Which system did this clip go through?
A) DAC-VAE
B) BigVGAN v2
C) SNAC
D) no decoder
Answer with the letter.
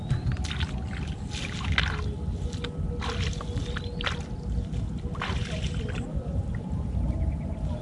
D